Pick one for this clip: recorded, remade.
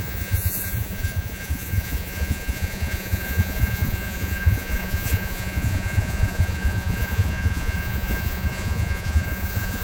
remade